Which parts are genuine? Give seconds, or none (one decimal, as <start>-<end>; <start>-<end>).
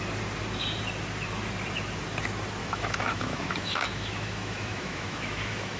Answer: 0.0-2.6